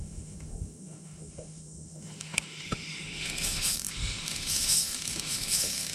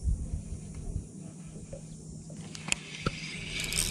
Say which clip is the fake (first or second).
first